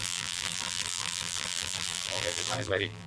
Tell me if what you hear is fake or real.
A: fake